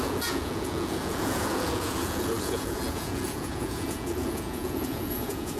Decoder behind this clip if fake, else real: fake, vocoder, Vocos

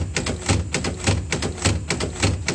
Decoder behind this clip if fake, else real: real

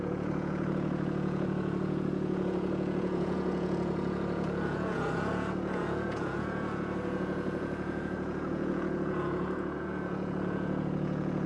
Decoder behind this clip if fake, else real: fake, vocoder, Vocos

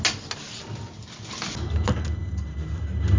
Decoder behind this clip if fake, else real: real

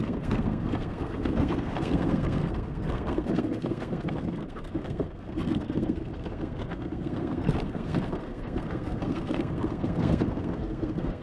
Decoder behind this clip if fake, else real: fake, codec, SNAC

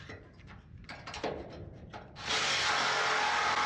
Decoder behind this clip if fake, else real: real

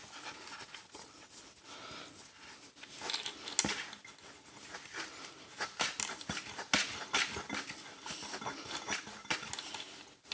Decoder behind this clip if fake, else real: real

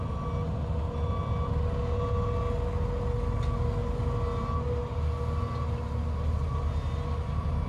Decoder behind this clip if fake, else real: real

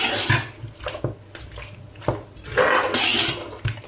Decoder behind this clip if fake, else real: real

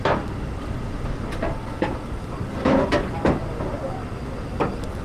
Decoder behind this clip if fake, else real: real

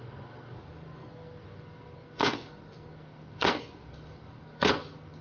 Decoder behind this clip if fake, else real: fake, codec, SNAC